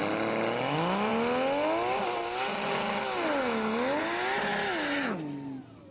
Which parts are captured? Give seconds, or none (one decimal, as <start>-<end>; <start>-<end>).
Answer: 0.0-5.9